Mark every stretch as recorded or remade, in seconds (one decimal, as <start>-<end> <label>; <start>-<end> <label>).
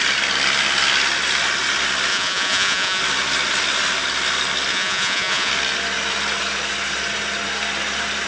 0.0-2.1 recorded; 2.1-3.0 remade; 3.0-4.7 recorded; 4.7-5.5 remade; 5.5-8.3 recorded